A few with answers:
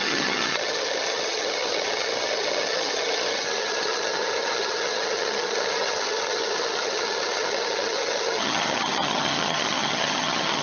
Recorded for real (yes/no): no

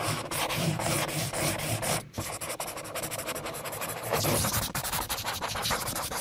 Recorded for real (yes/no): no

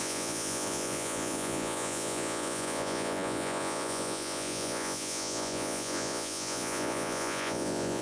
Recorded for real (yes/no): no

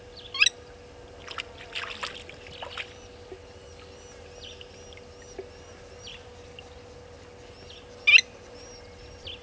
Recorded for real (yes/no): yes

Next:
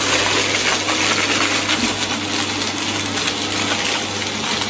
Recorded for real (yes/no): yes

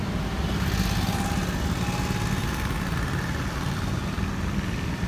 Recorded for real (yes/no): yes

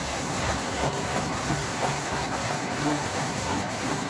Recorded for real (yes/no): no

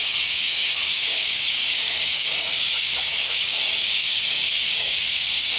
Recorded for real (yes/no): no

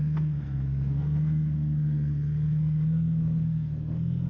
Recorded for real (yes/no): no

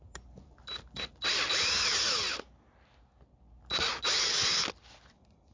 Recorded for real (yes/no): yes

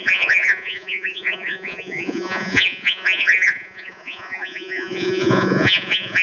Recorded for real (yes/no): no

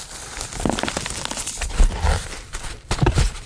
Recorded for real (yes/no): no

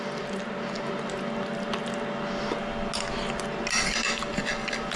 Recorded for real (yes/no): yes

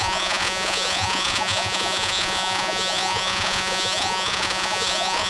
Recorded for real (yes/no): no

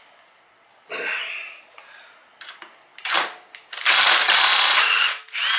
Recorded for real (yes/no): yes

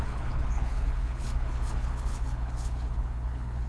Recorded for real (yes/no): no